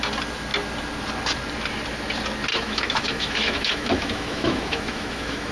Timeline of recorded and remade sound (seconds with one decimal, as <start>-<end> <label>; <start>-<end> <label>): 0.0-2.5 recorded; 2.5-5.5 remade